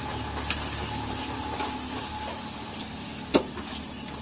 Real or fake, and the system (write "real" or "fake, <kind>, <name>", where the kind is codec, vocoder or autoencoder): real